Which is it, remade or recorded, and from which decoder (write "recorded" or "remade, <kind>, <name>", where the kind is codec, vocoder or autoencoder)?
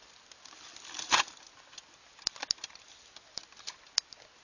recorded